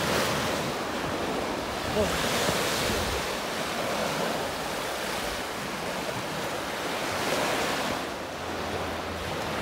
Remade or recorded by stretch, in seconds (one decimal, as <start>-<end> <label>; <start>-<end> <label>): 0.0-9.6 recorded